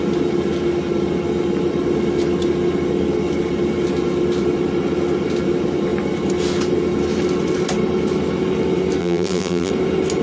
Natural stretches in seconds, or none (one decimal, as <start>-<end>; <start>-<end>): 0.0-9.0; 9.7-10.2